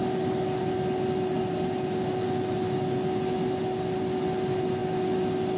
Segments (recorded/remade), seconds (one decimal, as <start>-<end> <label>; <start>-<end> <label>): 0.0-5.6 recorded

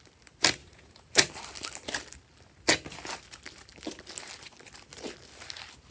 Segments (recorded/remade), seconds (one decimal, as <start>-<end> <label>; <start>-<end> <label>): 0.0-0.6 recorded; 0.6-1.3 remade; 1.3-5.9 recorded

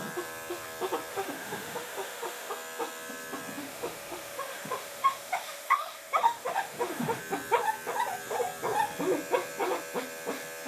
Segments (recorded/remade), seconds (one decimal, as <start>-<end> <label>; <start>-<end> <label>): 0.0-1.1 recorded; 1.1-2.5 remade; 2.5-3.6 recorded; 3.6-7.2 remade; 7.2-10.7 recorded

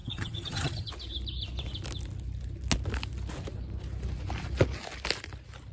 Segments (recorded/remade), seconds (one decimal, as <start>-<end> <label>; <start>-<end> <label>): 0.0-0.9 remade; 0.9-5.7 recorded

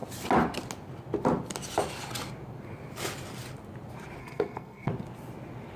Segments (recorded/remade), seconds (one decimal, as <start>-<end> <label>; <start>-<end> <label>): 0.0-4.2 recorded; 4.2-4.9 remade; 4.9-5.8 recorded

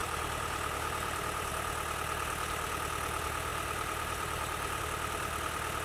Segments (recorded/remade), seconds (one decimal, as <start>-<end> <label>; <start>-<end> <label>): 0.0-1.5 remade; 1.5-3.5 recorded; 3.5-4.8 remade; 4.8-5.8 recorded

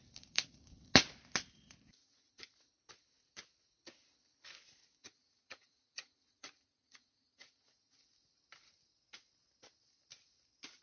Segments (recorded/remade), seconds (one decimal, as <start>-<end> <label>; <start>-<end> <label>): 0.0-1.9 recorded; 1.9-2.5 remade; 2.5-5.0 recorded; 5.0-8.1 remade; 8.1-10.8 recorded